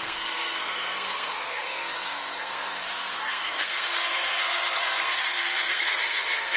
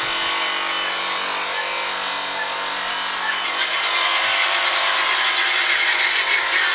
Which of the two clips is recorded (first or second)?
second